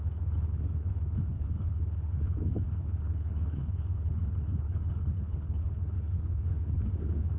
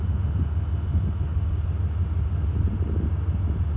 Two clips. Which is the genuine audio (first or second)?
second